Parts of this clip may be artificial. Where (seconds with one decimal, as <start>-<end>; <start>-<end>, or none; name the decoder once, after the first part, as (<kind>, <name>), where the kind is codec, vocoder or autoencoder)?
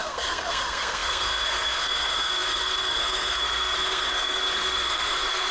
0.0-5.5 (codec, SNAC)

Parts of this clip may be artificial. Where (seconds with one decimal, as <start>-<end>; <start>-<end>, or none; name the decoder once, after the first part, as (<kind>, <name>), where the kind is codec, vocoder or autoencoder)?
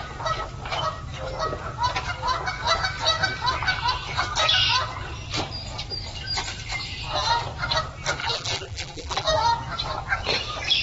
8.2-9.4 (vocoder, BigVGAN v2)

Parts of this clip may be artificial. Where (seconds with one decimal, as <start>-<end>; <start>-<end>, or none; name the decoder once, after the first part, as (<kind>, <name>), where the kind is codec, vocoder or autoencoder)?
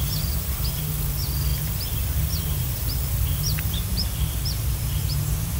0.0-0.8 (vocoder, BigVGAN v2); 1.5-4.9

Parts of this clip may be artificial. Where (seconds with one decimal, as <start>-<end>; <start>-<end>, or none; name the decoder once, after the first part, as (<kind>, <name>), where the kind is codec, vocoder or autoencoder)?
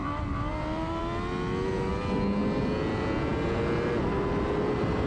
0.0-1.0 (vocoder, BigVGAN v2)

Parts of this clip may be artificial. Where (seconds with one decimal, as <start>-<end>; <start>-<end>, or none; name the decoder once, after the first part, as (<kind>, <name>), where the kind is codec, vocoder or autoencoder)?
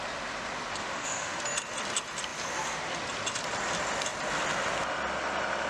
0.8-1.4 (autoencoder, DAC-VAE)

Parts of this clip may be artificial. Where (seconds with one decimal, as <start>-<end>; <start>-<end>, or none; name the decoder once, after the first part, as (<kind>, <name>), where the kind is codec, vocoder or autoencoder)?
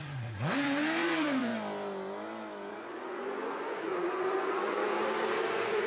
0.0-1.5 (vocoder, Vocos); 2.7-4.8; 5.5-5.9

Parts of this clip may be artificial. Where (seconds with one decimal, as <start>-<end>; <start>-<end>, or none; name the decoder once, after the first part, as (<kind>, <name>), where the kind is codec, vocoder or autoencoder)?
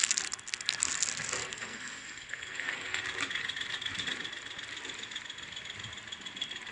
1.4-3.0 (codec, SNAC)